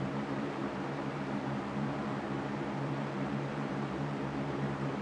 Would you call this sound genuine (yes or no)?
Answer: no